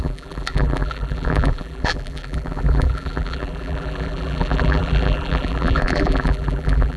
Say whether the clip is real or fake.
fake